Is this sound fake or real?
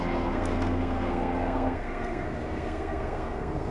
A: fake